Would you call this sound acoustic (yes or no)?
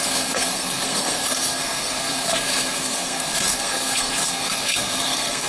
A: no